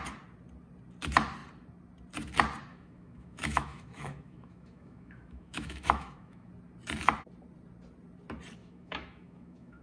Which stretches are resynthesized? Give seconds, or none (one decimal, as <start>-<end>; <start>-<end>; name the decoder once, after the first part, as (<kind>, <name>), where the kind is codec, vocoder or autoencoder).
2.7-6.5 (autoencoder, DAC-VAE); 8.6-9.8

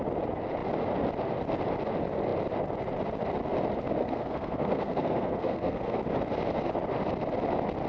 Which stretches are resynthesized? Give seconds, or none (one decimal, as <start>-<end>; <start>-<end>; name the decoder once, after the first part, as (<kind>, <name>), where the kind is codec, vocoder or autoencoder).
4.0-6.0 (codec, SNAC)

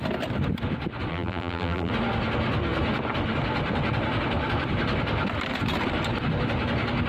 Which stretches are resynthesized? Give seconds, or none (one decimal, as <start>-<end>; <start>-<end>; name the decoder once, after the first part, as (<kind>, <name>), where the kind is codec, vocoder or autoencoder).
1.1-1.9 (vocoder, BigVGAN v2)

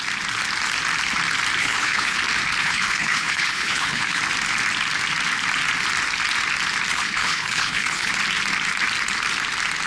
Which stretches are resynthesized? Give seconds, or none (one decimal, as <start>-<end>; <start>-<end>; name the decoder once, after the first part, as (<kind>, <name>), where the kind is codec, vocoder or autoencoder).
1.6-2.2 (codec, HILCodec); 2.6-4.2; 6.9-8.1

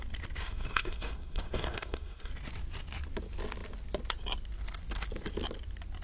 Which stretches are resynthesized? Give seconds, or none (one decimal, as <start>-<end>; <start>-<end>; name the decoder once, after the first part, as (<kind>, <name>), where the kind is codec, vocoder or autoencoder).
0.4-2.3 (codec, SNAC)

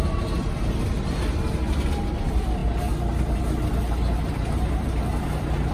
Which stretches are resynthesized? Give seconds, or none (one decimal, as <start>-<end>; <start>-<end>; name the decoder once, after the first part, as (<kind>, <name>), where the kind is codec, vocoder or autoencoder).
none

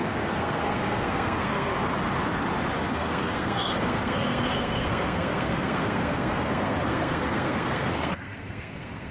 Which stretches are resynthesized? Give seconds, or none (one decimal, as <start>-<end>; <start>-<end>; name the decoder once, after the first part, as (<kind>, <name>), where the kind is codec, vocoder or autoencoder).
0.0-1.7 (codec, SNAC); 2.9-9.1

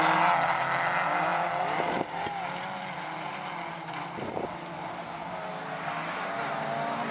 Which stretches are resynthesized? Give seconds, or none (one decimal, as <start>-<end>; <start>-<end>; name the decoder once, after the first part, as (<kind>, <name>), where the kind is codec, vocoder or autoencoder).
none